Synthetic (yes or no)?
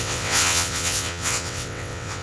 yes